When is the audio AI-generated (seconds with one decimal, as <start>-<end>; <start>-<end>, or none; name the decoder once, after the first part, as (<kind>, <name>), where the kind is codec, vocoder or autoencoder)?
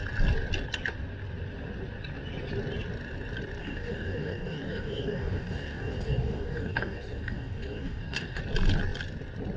3.6-8.4 (codec, DAC)